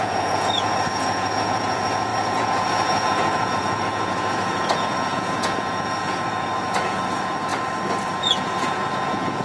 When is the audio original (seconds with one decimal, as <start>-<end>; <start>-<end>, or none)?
7.5-8.1